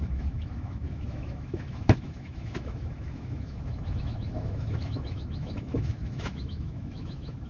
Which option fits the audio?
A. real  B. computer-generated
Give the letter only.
B